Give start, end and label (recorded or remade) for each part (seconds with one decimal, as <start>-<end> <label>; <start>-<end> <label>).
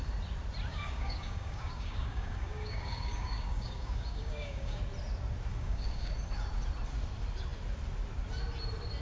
0.0-0.7 recorded; 0.7-4.8 remade; 4.8-5.5 recorded; 5.5-6.1 remade; 6.1-9.0 recorded